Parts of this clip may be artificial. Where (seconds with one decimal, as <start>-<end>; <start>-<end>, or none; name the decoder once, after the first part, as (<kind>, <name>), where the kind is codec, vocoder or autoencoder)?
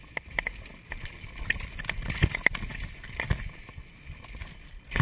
none